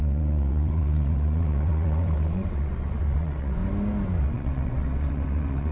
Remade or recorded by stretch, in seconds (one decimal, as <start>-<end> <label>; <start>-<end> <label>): 0.0-3.6 remade; 3.6-4.2 recorded; 4.2-5.7 remade